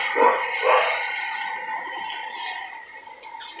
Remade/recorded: recorded